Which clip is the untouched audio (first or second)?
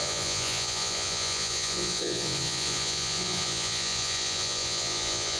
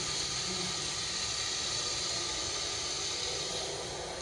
second